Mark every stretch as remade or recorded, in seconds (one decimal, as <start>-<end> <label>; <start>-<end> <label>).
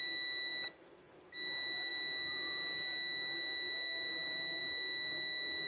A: 0.0-5.7 recorded